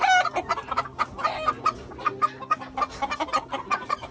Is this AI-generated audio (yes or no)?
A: no